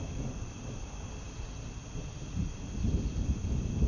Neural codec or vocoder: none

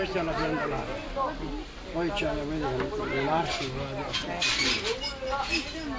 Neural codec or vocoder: none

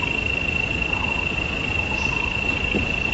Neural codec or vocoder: none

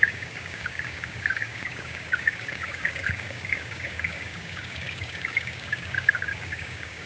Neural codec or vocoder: codec, DAC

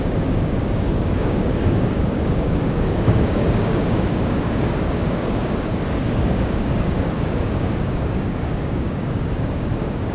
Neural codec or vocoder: codec, DAC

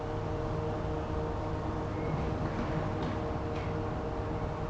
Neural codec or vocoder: none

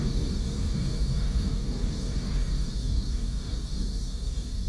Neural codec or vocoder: codec, DAC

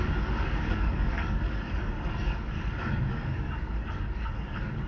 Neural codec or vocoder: codec, DAC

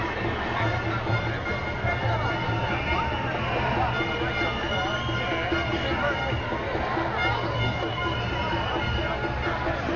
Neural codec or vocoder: none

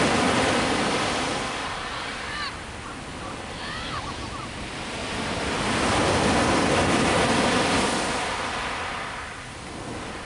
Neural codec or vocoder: none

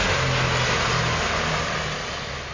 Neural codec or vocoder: none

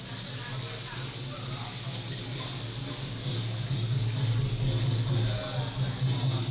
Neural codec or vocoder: none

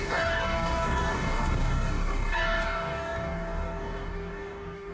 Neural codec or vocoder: codec, DAC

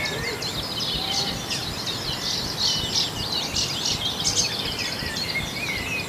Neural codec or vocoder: none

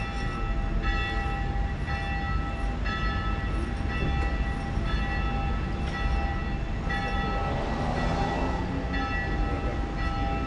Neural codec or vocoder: none